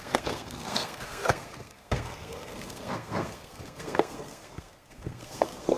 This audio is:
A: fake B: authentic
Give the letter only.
A